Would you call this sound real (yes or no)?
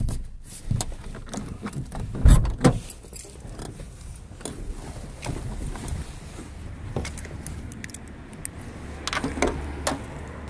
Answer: yes